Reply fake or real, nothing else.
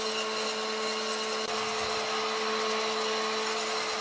real